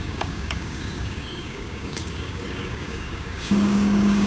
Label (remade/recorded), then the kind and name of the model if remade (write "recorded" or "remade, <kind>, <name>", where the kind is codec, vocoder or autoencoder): remade, codec, DAC